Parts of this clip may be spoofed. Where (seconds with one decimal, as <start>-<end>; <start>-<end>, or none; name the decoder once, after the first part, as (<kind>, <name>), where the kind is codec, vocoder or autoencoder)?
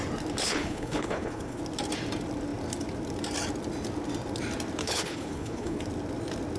0.4-1.6 (codec, HILCodec); 4.8-5.8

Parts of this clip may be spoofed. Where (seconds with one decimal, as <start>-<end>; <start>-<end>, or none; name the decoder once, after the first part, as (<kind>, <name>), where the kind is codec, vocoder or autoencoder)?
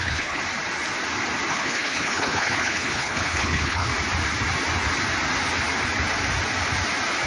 0.0-0.4 (codec, HILCodec); 1.5-3.9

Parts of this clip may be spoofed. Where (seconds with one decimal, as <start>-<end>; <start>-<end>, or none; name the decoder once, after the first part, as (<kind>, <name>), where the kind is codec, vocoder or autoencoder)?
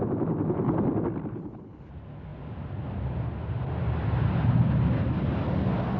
1.3-1.9 (codec, HILCodec)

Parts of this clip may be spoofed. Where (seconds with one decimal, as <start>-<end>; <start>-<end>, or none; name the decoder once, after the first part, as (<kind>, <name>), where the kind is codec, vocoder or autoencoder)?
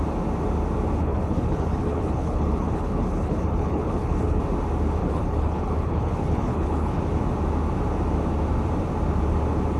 1.0-4.4 (codec, HILCodec); 5.0-7.0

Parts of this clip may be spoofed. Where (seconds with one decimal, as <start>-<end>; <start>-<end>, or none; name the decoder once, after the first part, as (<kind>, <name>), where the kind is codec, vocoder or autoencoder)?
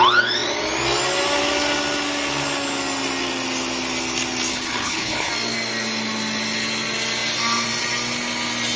4.5-5.3 (codec, HILCodec)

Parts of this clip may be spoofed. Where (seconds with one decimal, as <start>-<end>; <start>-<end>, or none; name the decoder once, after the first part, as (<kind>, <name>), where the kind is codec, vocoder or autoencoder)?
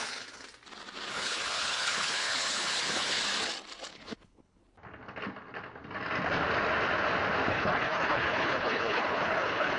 0.0-0.4 (codec, HILCodec); 1.1-3.2; 3.9-4.6; 7.5-9.8